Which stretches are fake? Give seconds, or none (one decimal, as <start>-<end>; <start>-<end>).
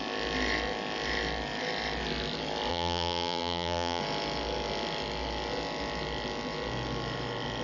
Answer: 2.7-4.0